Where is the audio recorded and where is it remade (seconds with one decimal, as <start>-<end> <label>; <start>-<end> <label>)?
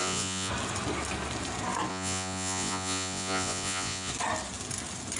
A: 0.0-0.5 remade; 0.5-1.9 recorded; 1.9-4.1 remade; 4.1-5.2 recorded